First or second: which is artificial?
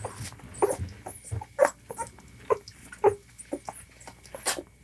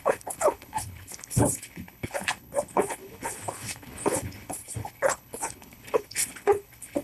second